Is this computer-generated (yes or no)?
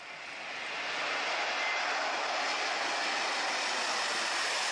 no